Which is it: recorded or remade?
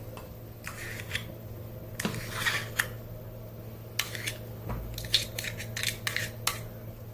recorded